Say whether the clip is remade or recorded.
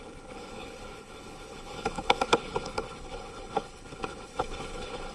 remade